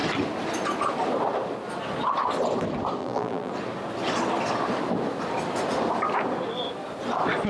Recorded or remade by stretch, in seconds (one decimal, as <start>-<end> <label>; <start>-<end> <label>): 0.0-3.0 recorded; 3.0-3.5 remade; 3.5-7.5 recorded